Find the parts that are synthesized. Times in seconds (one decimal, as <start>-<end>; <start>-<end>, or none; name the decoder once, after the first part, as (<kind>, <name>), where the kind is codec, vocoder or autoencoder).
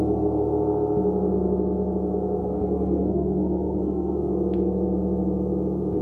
2.4-4.3 (codec, SNAC)